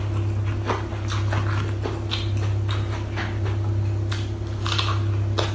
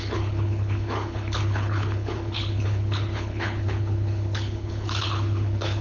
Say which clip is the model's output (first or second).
second